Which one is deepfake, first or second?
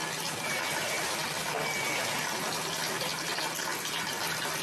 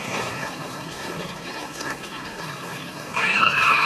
second